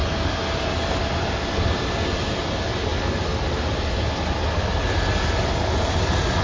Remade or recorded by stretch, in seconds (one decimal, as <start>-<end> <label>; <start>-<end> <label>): 0.0-6.4 recorded

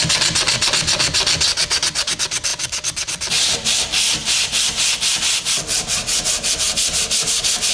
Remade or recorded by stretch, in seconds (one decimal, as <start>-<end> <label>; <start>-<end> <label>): 0.0-1.6 recorded; 1.6-2.1 remade; 2.1-2.5 recorded; 2.5-3.3 remade; 3.3-4.2 recorded; 4.2-6.5 remade; 6.5-7.7 recorded

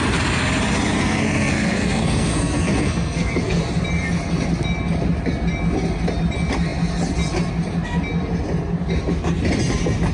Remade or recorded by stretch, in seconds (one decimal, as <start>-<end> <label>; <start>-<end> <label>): 0.0-1.0 recorded; 1.0-3.6 remade; 3.6-10.1 recorded

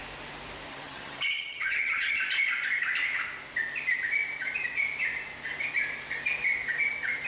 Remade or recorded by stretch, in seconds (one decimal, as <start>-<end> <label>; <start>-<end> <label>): 0.0-0.7 recorded; 0.7-2.2 remade; 2.2-7.3 recorded

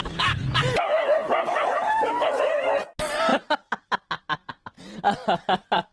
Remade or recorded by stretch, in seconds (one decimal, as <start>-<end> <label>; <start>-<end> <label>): 0.0-5.9 recorded